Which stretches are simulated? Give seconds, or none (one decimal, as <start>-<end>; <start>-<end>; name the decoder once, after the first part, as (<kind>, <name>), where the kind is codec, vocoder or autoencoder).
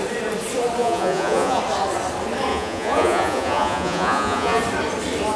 0.8-1.6 (vocoder, Vocos); 2.5-4.6